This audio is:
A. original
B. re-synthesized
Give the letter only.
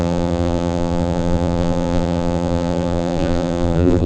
B